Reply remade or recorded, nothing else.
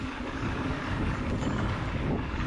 remade